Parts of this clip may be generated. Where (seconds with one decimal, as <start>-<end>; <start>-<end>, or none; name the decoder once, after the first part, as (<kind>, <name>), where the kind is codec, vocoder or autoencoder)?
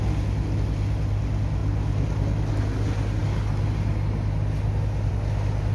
none